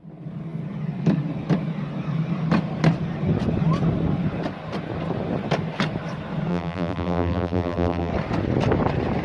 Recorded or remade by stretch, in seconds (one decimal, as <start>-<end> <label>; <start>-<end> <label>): 0.0-6.5 recorded; 6.5-8.1 remade; 8.1-9.2 recorded